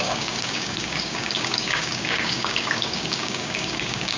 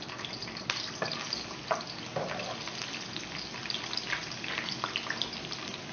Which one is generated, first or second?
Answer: first